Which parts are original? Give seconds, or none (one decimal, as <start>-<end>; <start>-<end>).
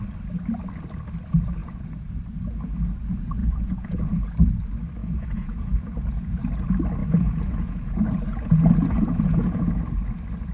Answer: 0.0-1.6; 2.2-3.4; 4.3-5.0; 6.4-7.0; 9.7-10.5